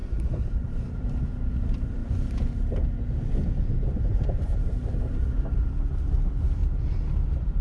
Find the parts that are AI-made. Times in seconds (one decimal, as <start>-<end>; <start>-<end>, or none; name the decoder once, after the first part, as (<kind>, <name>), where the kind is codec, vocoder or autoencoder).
0.0-1.3 (vocoder, BigVGAN v2); 4.1-5.7; 6.6-7.6